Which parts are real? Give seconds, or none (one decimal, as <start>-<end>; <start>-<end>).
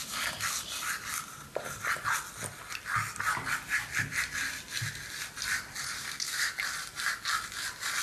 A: 0.0-6.0; 6.5-8.0